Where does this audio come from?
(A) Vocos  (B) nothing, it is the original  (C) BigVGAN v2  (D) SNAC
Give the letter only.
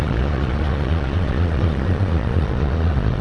A